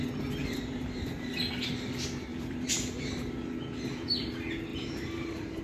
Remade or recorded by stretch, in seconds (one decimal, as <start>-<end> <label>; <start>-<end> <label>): 0.0-0.4 recorded; 0.4-1.4 remade; 1.4-2.3 recorded; 2.3-3.3 remade; 3.3-4.7 recorded; 4.7-5.6 remade